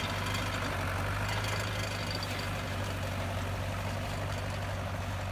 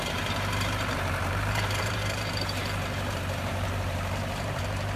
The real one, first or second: first